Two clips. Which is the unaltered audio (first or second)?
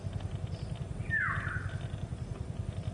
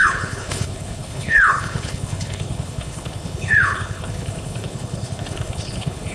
first